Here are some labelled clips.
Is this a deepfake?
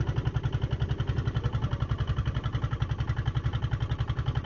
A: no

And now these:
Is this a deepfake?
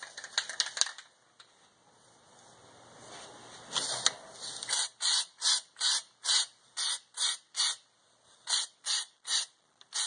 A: no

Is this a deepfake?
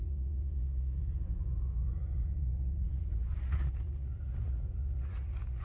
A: yes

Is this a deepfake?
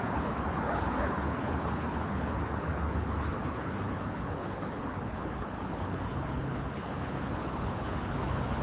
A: yes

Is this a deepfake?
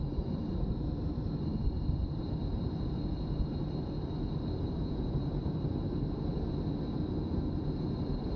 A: no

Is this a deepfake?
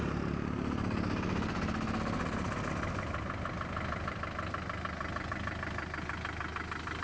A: no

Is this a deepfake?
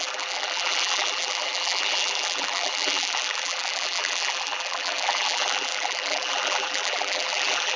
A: yes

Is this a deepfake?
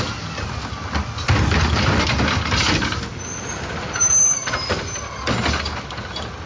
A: no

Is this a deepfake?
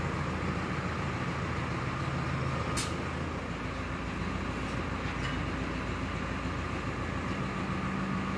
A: no